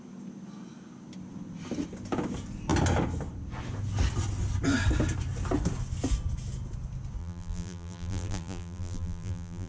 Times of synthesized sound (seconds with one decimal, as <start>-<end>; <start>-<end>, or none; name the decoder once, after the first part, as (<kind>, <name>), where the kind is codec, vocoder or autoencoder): 7.2-9.7 (vocoder, BigVGAN v2)